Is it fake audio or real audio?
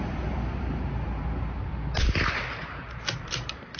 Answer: fake